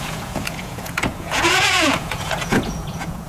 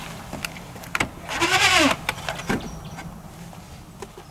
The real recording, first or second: second